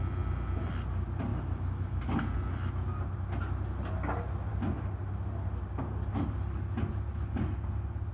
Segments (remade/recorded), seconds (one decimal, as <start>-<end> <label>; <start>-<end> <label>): 0.0-1.3 recorded; 1.3-2.0 remade; 2.0-8.1 recorded